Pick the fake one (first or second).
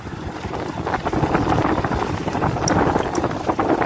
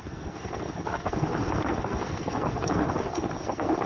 second